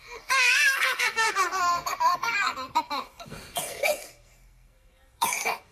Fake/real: fake